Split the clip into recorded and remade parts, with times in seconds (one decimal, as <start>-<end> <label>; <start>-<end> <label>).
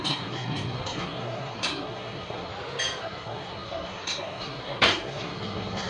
0.0-2.5 remade; 2.5-3.0 recorded; 3.0-5.9 remade